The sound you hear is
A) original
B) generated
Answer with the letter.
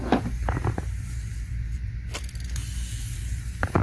A